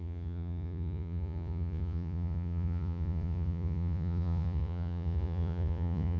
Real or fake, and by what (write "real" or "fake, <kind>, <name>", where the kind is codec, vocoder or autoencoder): fake, vocoder, Vocos